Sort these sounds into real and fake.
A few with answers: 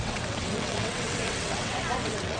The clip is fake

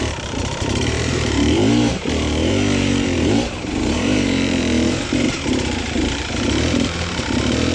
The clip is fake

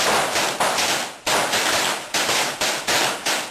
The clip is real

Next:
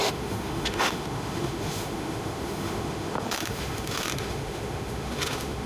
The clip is fake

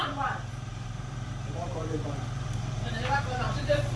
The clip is fake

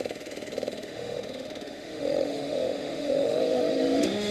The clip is fake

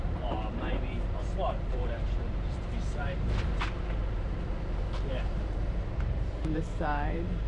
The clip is fake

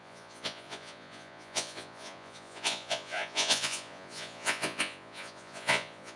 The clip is fake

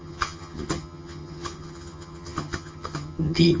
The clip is fake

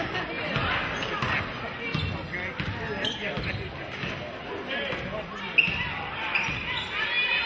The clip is real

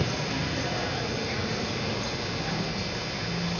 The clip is real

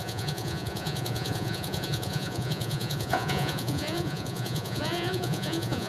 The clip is fake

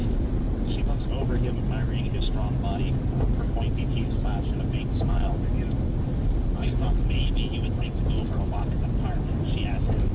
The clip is real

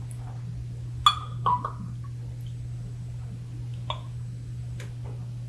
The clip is real